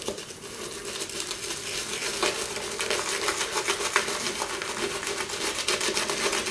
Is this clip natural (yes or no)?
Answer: yes